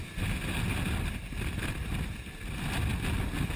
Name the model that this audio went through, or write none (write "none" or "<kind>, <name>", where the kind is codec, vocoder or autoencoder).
none